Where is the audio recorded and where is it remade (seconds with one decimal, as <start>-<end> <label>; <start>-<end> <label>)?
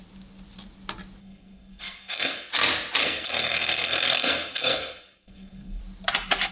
0.0-1.2 recorded; 1.2-2.5 remade; 2.5-3.0 recorded; 3.0-5.8 remade; 5.8-6.5 recorded